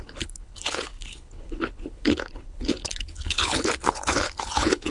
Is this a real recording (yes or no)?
no